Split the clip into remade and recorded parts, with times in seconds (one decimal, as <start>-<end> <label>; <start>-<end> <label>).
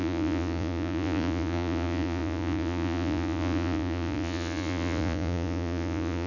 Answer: 0.0-6.3 remade